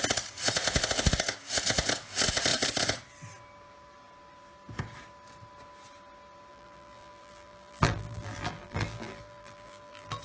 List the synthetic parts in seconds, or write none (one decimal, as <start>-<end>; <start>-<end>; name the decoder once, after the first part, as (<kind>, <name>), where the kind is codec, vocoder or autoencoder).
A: 6.5-10.2 (vocoder, BigVGAN v2)